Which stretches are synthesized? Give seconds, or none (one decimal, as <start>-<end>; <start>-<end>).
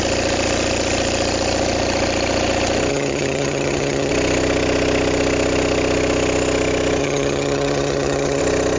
2.9-4.1; 7.0-8.4